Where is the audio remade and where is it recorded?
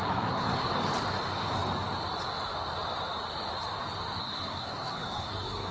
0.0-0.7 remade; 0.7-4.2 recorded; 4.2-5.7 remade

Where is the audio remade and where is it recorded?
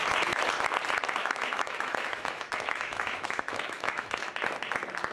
0.0-1.2 recorded; 1.2-4.3 remade; 4.3-5.1 recorded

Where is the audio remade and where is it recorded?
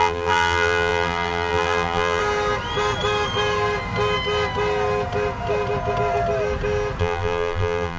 0.0-2.2 remade; 2.2-7.0 recorded; 7.0-8.0 remade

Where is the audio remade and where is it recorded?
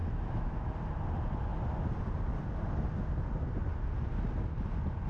0.0-0.7 remade; 0.7-5.1 recorded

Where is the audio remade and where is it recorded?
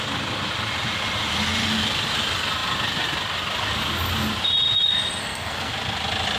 0.0-5.2 recorded; 5.2-5.7 remade; 5.7-6.4 recorded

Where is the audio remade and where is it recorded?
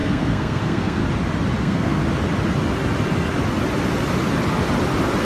0.0-1.0 remade; 1.0-1.6 recorded; 1.6-2.0 remade; 2.0-5.2 recorded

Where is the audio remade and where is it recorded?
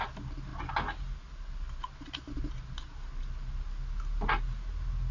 0.0-5.1 recorded